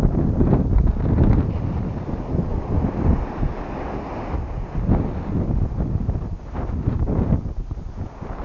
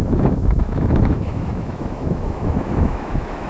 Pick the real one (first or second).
first